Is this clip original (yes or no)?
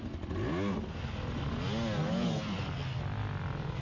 yes